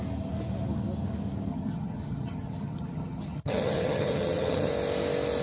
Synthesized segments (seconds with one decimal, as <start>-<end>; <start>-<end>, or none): 1.5-4.7